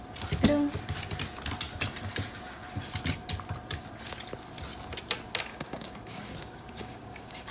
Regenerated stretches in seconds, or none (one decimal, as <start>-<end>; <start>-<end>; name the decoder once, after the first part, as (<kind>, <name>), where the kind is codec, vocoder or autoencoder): 5.5-7.5 (codec, DAC)

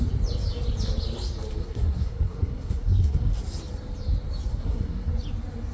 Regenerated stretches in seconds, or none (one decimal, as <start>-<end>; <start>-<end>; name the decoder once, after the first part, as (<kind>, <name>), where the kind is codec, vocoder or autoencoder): 1.6-3.3 (codec, SNAC); 4.5-5.1

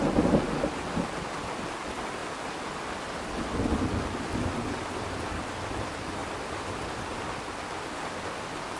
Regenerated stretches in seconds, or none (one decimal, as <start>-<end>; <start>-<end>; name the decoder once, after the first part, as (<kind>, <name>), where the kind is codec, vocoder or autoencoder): 6.2-7.6 (vocoder, BigVGAN v2)

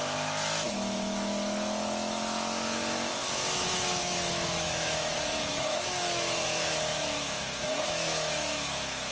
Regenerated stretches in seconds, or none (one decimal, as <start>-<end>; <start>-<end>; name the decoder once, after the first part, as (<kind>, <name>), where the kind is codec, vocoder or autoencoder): 0.0-9.1 (autoencoder, DAC-VAE)

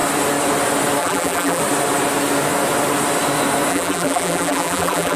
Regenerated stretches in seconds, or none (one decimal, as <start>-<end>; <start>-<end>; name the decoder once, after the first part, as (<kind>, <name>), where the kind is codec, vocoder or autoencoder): 1.0-1.6 (vocoder, BigVGAN v2); 3.7-5.2